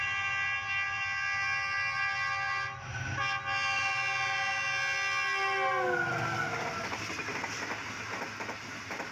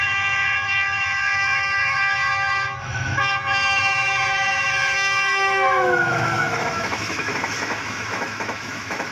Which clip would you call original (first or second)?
first